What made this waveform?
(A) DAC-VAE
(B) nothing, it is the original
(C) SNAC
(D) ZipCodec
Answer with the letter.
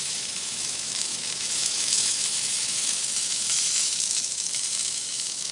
A